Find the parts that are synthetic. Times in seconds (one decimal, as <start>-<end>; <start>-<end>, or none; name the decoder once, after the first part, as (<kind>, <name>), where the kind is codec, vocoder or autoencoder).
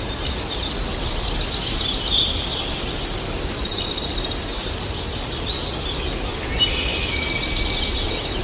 4.5-5.3 (vocoder, BigVGAN v2)